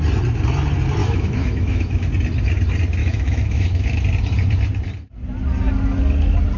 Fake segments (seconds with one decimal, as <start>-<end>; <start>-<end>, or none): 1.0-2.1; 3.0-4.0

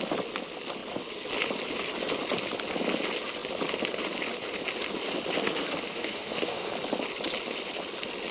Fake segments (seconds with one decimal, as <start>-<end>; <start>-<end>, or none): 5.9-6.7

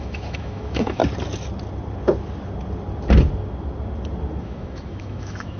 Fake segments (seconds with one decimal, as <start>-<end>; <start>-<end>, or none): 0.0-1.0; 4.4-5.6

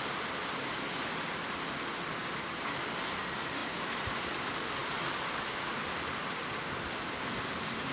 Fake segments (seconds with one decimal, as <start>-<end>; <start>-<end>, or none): none

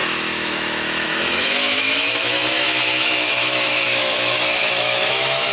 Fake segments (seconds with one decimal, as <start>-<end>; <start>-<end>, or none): 0.0-5.5

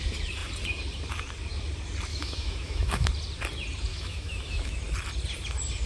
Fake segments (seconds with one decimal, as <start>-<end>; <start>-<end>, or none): 2.1-3.1; 3.9-4.8